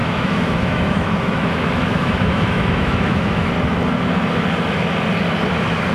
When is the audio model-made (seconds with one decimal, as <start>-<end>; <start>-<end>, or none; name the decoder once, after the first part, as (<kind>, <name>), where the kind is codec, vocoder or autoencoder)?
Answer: 0.0-3.5 (autoencoder, DAC-VAE)